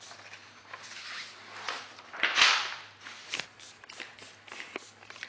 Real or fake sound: real